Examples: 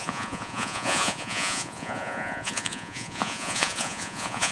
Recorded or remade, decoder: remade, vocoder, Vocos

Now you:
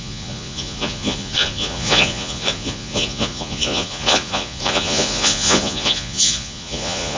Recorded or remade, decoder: remade, vocoder, Vocos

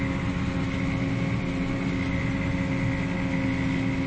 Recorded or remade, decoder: recorded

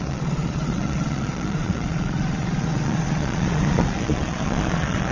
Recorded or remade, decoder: remade, vocoder, Vocos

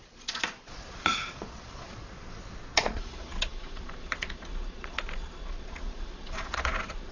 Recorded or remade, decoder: remade, vocoder, Vocos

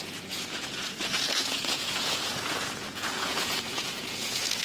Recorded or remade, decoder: remade, vocoder, Vocos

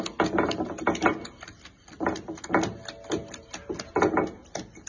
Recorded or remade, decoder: recorded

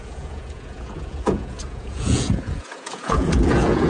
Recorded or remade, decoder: remade, vocoder, Vocos